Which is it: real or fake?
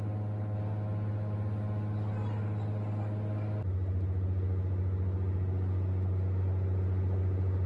real